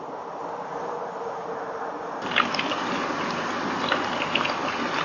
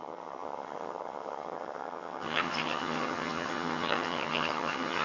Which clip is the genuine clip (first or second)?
first